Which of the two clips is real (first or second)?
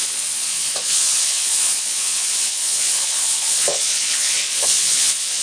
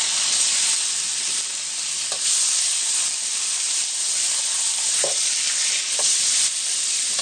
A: second